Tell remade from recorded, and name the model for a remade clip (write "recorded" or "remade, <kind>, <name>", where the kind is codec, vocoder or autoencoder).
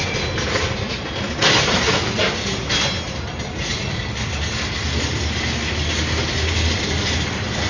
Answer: recorded